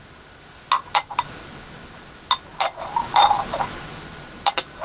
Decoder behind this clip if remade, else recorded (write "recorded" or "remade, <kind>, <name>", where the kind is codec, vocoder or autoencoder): recorded